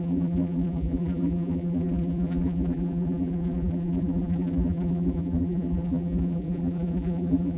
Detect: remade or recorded remade